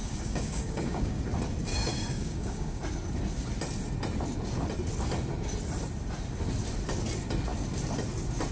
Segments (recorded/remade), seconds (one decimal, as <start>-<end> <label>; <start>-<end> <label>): 0.0-1.2 remade; 1.2-1.7 recorded; 1.7-2.8 remade; 2.8-8.5 recorded